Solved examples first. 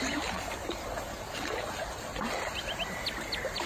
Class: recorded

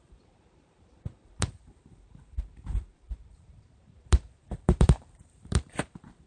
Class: remade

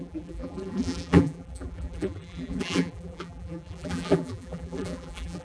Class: remade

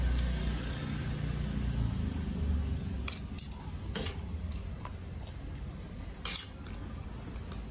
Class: recorded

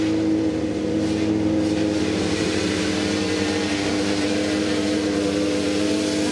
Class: recorded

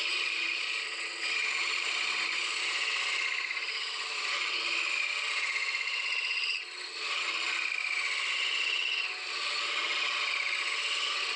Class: recorded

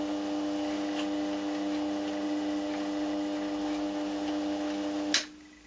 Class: recorded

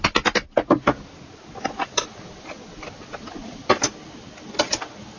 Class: recorded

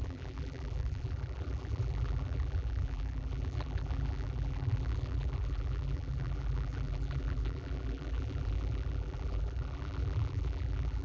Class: remade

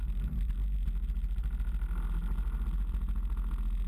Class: recorded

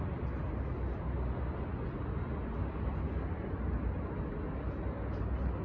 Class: recorded